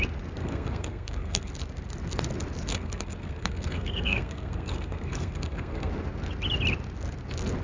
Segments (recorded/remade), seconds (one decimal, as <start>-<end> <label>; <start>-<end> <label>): 0.0-0.4 recorded; 0.4-1.5 remade; 1.5-2.7 recorded; 2.7-5.9 remade; 5.9-7.6 recorded

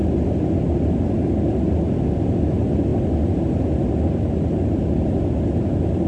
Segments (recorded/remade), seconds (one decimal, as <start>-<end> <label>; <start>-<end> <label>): 0.0-6.1 recorded

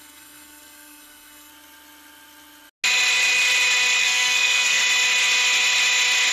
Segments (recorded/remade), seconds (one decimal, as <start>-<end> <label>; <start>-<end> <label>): 0.0-1.5 remade; 1.5-4.0 recorded; 4.0-4.8 remade; 4.8-6.3 recorded

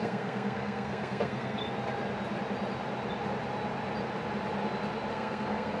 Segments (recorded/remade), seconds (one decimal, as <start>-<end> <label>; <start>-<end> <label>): 0.0-1.6 remade; 1.6-5.1 recorded; 5.1-5.8 remade

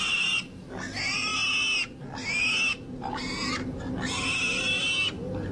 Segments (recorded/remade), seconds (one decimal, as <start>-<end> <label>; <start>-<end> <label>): 0.0-5.5 recorded